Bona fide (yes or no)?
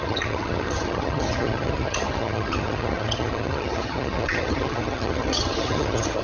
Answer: no